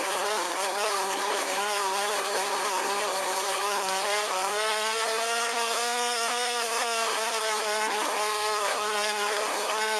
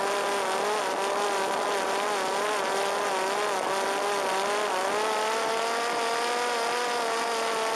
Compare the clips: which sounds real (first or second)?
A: second